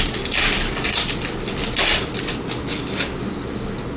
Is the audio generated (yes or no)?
no